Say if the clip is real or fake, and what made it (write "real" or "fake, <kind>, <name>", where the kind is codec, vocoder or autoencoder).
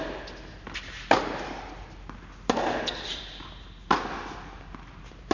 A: real